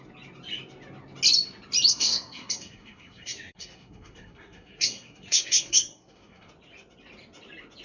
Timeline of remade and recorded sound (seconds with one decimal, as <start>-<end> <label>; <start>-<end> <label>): 0.0-1.9 recorded; 1.9-6.5 remade; 6.5-7.8 recorded